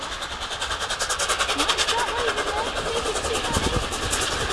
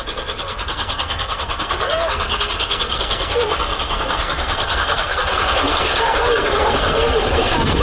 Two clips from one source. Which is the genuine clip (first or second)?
first